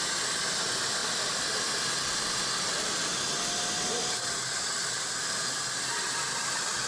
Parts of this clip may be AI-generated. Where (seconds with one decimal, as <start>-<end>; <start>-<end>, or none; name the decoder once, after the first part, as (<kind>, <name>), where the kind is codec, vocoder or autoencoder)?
none